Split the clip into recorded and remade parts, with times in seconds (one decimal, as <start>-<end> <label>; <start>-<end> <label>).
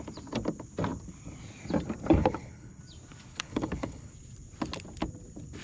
0.0-2.2 recorded; 2.2-2.8 remade; 2.8-3.3 recorded; 3.3-4.1 remade; 4.1-5.6 recorded